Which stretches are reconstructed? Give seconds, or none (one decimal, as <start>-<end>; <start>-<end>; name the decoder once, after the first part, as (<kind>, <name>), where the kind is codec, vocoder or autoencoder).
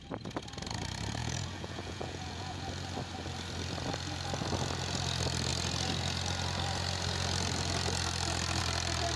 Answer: 1.2-2.6 (vocoder, Vocos)